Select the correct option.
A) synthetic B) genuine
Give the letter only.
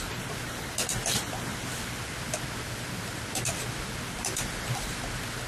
B